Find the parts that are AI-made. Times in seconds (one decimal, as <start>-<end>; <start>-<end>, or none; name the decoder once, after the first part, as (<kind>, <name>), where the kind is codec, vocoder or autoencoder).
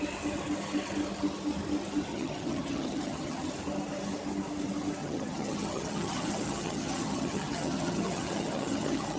2.1-3.5 (vocoder, HiFi-GAN); 5.0-9.2